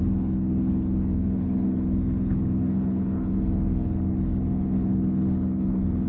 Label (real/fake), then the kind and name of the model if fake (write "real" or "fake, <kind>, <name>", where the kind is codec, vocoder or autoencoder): fake, codec, HILCodec